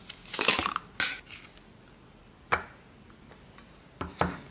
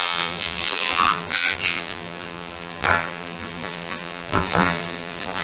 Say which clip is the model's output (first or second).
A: second